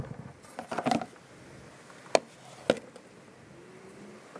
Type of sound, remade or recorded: recorded